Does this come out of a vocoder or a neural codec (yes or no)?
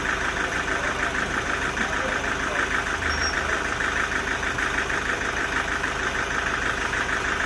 yes